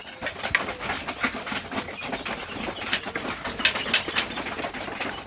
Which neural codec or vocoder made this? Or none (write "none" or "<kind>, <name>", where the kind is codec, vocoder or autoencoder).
none